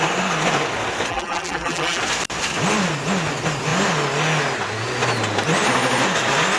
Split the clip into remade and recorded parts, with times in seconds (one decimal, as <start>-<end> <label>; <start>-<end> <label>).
0.0-1.1 recorded; 1.1-2.0 remade; 2.0-6.6 recorded